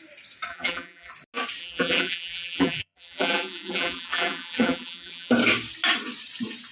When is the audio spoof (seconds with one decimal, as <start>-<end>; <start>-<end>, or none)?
0.5-1.1; 1.6-5.3